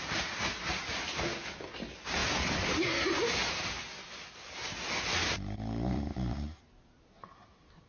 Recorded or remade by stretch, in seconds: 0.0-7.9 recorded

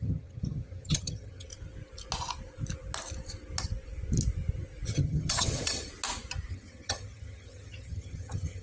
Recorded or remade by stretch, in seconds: 0.0-1.5 remade; 1.5-4.9 recorded; 4.9-5.9 remade; 5.9-6.5 recorded; 6.5-8.6 remade

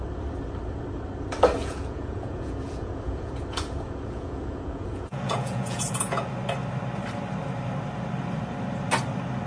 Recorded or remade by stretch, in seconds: 0.0-1.6 recorded; 1.6-6.3 remade; 6.3-9.5 recorded